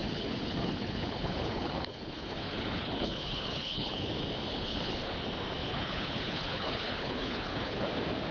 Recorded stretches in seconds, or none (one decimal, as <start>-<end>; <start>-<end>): 4.1-4.5; 5.1-5.6; 7.9-8.3